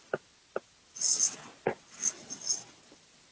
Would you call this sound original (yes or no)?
yes